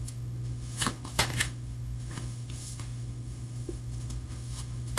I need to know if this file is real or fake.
fake